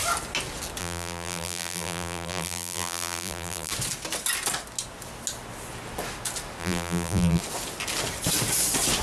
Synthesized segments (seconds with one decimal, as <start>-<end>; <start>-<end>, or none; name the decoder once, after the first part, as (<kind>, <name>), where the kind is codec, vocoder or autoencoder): 0.8-3.7 (vocoder, BigVGAN v2); 6.6-7.4